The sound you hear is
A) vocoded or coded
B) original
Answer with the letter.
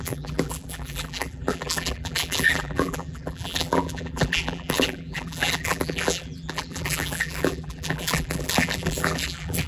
A